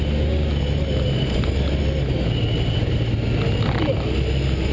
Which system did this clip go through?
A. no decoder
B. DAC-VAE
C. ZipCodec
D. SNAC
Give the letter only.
A